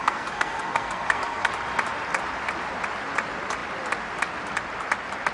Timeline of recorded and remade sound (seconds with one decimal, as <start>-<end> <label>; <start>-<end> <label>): 0.0-1.5 remade; 1.5-5.3 recorded